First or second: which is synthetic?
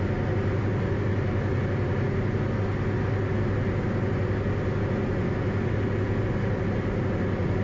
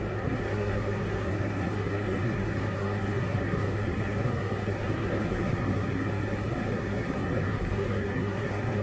second